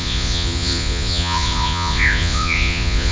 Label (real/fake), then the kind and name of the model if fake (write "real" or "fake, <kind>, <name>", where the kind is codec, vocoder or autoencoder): fake, vocoder, Vocos